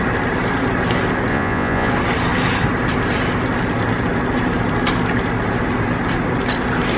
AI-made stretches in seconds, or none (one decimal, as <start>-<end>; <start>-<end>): 1.3-1.9